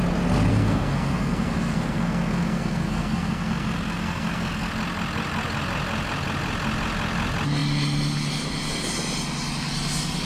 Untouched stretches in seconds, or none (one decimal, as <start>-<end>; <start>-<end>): 0.0-0.5; 4.7-10.3